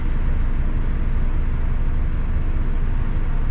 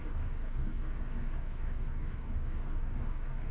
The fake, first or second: second